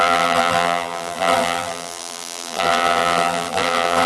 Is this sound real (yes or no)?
no